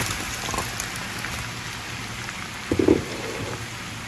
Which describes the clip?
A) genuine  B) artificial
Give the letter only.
A